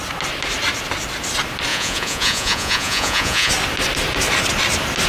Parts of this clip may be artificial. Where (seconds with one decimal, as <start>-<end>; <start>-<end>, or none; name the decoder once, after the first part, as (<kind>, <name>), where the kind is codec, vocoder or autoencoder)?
1.7-3.5 (vocoder, Vocos)